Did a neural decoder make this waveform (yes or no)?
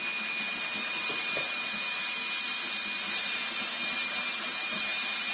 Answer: no